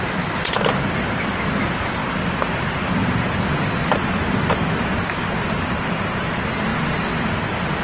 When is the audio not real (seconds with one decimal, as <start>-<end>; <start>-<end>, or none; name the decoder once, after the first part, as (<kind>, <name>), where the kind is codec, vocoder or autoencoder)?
0.0-2.0 (vocoder, BigVGAN v2); 6.3-6.7